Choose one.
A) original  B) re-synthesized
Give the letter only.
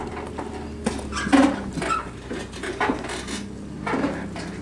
A